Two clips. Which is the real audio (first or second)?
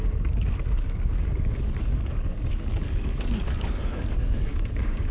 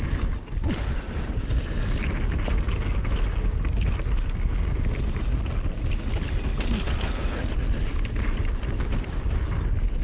second